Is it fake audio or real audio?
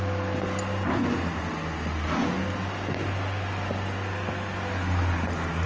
real